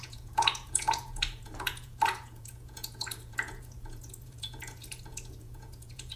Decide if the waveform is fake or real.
fake